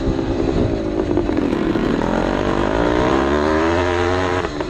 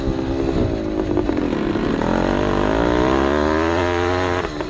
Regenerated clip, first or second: first